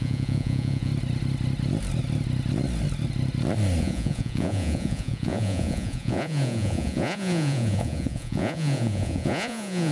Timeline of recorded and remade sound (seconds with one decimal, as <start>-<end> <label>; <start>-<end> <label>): 0.0-0.9 remade; 0.9-3.8 recorded; 3.8-9.9 remade